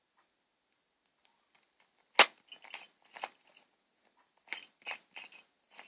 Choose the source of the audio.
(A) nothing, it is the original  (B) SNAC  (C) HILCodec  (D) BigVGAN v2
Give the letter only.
A